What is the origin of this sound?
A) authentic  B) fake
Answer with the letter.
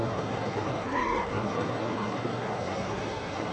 B